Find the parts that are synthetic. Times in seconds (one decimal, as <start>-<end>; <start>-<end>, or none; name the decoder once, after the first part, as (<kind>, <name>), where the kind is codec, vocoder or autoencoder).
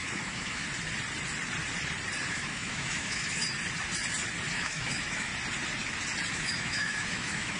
0.0-0.6 (autoencoder, DAC-VAE); 2.3-3.4; 4.5-5.3; 6.3-7.6